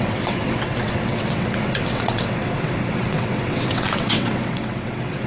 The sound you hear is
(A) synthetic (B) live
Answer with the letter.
A